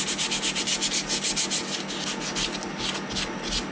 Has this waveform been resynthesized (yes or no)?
no